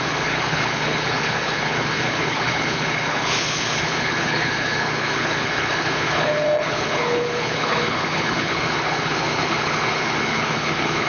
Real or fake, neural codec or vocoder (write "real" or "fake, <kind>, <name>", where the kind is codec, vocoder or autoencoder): fake, codec, HILCodec